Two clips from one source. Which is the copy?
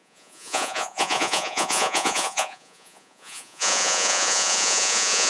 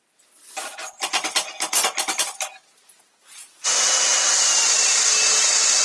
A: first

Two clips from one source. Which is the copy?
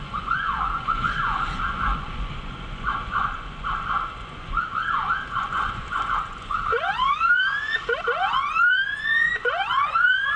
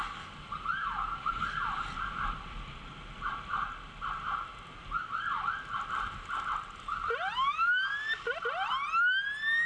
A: first